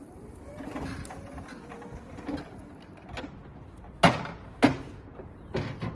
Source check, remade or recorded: recorded